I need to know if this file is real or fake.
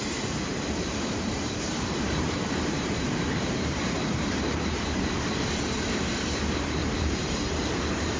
fake